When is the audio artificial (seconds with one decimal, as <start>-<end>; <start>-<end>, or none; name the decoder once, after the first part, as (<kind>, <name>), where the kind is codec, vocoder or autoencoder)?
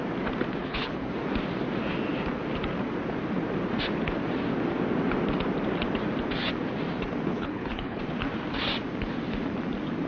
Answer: 0.6-1.1 (codec, HILCodec); 7.3-8.0